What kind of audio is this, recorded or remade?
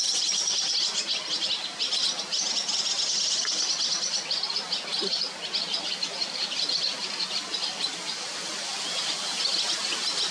recorded